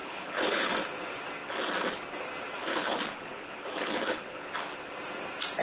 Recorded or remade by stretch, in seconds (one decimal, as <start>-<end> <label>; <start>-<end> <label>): 0.0-0.7 remade; 0.7-2.7 recorded; 2.7-4.5 remade; 4.5-5.6 recorded